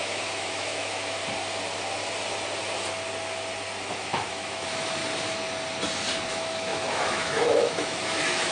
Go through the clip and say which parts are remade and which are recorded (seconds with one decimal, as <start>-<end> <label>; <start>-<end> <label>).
0.0-1.2 remade; 1.2-3.9 recorded; 3.9-5.0 remade; 5.0-6.3 recorded; 6.3-8.5 remade